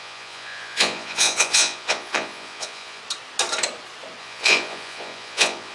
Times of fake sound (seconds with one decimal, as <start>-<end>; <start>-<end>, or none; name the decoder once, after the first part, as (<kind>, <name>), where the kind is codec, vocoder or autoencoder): 0.0-3.0 (vocoder, Vocos); 4.2-5.7